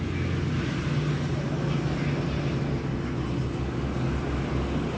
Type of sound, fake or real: real